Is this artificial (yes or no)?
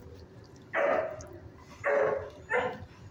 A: no